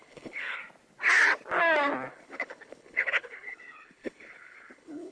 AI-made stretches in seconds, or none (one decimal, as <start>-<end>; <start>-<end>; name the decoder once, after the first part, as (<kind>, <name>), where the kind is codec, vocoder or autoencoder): 0.0-0.6 (codec, HILCodec); 2.1-5.1